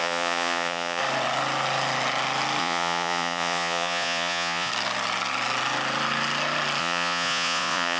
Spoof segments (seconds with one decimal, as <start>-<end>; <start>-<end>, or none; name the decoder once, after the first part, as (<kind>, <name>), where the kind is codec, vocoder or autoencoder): 0.0-1.0 (vocoder, Vocos); 2.6-4.7; 6.8-8.0